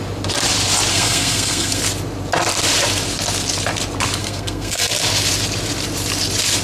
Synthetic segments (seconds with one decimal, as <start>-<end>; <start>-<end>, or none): 0.9-1.8; 4.2-4.9